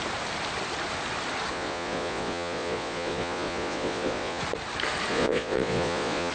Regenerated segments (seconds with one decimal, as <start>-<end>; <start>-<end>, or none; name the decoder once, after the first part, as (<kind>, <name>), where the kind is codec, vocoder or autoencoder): 1.5-4.4 (vocoder, Vocos); 5.1-6.3